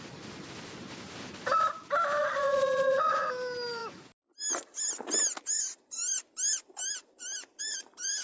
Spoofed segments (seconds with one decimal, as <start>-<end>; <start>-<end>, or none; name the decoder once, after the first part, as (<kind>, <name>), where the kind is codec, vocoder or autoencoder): 2.2-3.2 (vocoder, Vocos)